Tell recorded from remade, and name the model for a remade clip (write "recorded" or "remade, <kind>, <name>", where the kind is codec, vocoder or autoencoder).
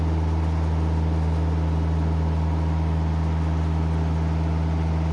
recorded